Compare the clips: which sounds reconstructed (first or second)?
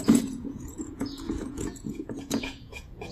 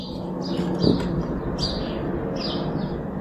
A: first